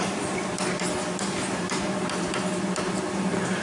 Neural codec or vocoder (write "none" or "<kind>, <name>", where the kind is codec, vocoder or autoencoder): none